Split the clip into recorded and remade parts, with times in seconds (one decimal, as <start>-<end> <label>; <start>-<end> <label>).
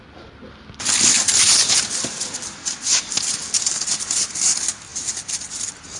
0.0-6.0 recorded